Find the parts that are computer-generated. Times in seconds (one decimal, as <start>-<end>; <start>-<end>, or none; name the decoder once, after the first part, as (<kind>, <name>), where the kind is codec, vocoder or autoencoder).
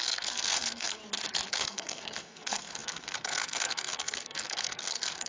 0.0-1.0 (codec, SNAC); 1.5-5.3